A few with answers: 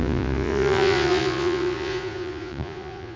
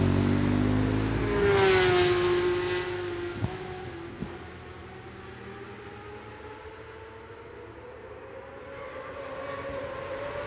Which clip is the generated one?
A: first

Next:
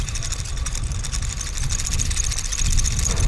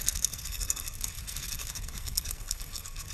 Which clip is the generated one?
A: second